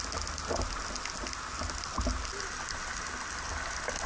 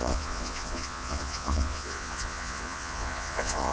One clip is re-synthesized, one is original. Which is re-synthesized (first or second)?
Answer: second